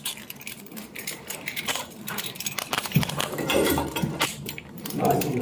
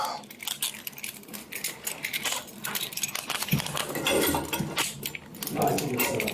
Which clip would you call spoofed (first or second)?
first